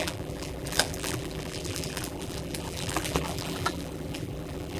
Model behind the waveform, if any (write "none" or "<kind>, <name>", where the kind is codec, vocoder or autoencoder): vocoder, BigVGAN v2